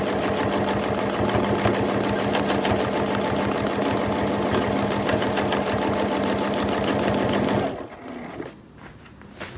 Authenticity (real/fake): real